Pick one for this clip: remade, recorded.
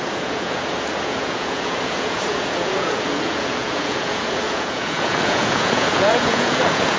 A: remade